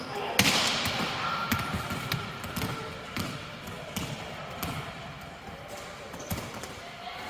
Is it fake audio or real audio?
real